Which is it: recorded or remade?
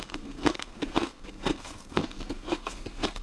remade